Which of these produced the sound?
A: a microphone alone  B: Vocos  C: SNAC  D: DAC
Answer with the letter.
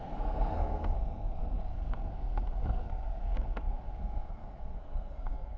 C